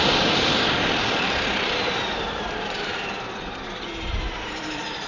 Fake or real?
fake